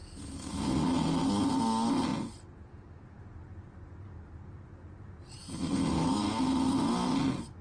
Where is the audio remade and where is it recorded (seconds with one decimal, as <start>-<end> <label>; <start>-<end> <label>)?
0.0-0.8 remade; 0.8-5.4 recorded; 5.4-6.2 remade; 6.2-7.6 recorded